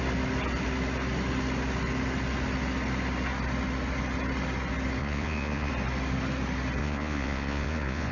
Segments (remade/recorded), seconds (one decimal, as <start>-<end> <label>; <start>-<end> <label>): 0.0-5.0 recorded; 5.0-5.7 remade; 5.7-6.8 recorded; 6.8-8.1 remade